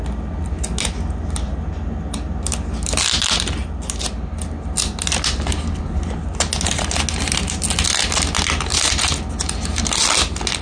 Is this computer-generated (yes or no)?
no